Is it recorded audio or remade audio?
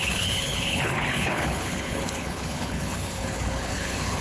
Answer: remade